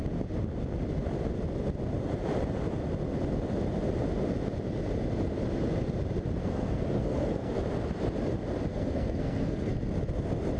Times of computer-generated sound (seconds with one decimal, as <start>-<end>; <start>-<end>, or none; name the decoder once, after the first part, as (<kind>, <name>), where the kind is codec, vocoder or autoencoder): 6.4-7.6 (codec, SNAC); 8.7-9.7